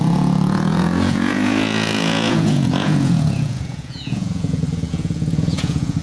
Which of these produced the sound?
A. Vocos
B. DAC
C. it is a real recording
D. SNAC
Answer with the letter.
A